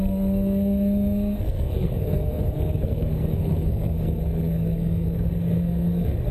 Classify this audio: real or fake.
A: fake